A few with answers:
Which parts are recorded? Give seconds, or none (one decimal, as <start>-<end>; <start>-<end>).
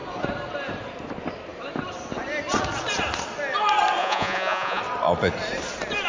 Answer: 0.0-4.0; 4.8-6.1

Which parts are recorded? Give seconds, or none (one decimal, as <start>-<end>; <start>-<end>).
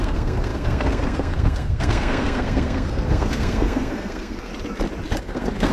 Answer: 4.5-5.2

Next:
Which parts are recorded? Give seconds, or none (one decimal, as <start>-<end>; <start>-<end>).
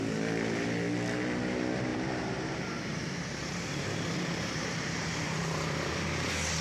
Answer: 0.0-1.9; 5.9-6.6